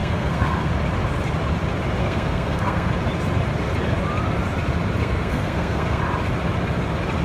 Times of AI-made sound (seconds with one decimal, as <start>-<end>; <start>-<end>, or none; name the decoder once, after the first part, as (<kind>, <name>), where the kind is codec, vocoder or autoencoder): 0.0-0.7 (codec, SNAC); 2.0-2.9; 5.0-6.0